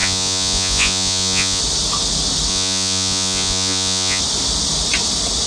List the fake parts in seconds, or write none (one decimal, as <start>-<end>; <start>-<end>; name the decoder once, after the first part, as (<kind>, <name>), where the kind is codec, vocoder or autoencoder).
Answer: 0.0-1.6 (vocoder, Vocos); 2.5-4.2